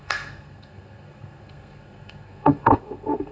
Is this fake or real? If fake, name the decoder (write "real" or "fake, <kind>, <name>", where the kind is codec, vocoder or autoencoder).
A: fake, codec, SNAC